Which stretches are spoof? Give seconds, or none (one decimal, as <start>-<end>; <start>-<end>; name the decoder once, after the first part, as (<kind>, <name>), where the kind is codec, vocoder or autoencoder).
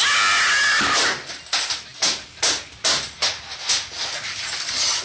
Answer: none